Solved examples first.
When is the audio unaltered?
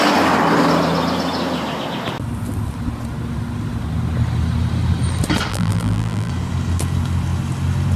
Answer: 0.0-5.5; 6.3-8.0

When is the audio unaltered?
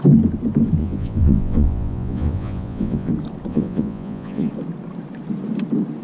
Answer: 0.0-0.8; 3.1-3.5; 4.5-6.0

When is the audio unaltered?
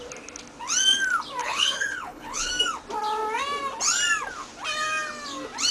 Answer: 0.0-1.4; 2.5-5.7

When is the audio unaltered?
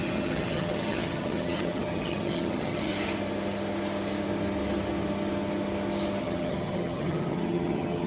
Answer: 2.9-6.2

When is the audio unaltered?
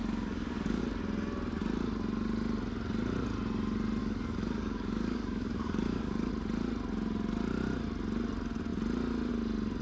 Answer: 0.8-4.0; 6.3-9.8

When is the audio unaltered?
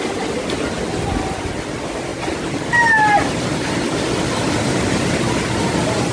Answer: 0.0-6.1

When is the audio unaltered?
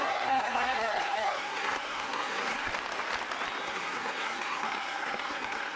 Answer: 2.7-3.6